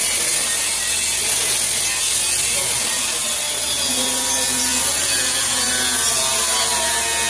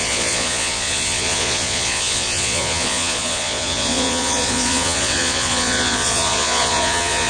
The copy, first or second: second